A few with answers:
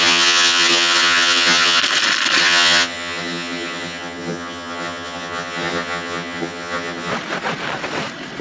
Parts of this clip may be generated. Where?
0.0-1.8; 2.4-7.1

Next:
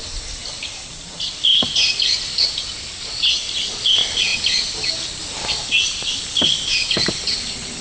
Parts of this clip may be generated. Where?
none

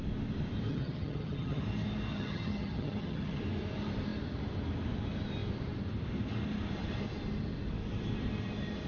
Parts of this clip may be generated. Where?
0.7-1.6; 2.1-3.4

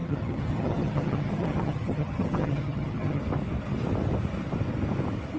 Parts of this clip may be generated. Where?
0.0-3.2

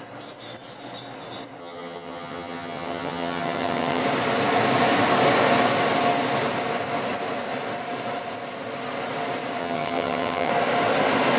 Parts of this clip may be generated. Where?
1.6-4.0; 9.6-10.5

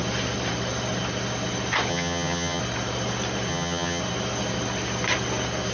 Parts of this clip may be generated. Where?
1.9-2.6; 3.5-4.0